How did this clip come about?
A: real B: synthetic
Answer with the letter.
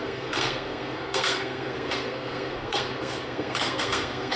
B